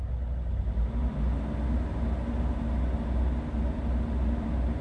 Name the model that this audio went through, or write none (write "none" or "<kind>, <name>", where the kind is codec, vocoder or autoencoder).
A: none